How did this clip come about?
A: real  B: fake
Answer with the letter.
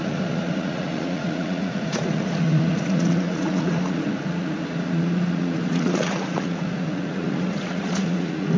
B